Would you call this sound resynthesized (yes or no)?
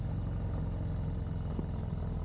no